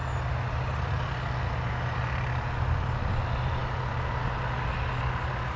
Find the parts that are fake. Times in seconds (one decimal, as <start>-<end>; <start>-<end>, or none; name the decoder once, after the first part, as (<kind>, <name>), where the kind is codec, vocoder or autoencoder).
none

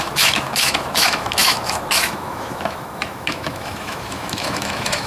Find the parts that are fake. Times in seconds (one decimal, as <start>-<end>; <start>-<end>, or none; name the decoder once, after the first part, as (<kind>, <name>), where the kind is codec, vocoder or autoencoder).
0.0-5.1 (autoencoder, DAC-VAE)

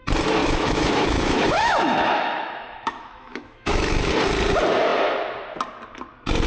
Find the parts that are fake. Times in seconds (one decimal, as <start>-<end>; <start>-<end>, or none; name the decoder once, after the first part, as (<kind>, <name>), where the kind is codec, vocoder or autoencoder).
0.4-4.1 (autoencoder, DAC-VAE)

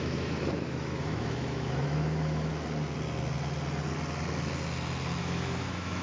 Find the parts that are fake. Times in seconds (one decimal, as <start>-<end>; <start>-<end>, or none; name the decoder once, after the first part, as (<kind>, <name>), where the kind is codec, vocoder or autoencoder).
0.0-2.5 (autoencoder, DAC-VAE); 5.2-6.0

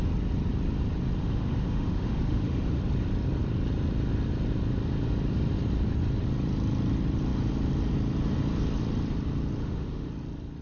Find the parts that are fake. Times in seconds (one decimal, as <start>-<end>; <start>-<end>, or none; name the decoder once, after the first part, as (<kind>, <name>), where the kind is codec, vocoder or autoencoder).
1.2-2.8 (autoencoder, DAC-VAE); 9.6-10.1